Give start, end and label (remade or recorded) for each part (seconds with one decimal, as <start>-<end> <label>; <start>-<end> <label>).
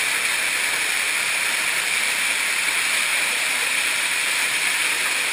0.0-3.1 recorded; 3.1-4.5 remade; 4.5-5.3 recorded